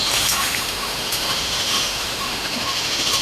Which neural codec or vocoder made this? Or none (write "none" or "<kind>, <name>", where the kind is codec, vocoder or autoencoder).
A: autoencoder, DAC-VAE